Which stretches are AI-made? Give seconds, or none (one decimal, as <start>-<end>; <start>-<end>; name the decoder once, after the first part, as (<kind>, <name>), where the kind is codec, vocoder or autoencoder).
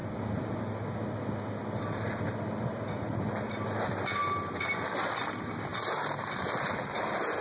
none